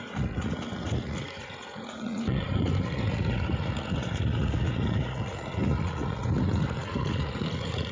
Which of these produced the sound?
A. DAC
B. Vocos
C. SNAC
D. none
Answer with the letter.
B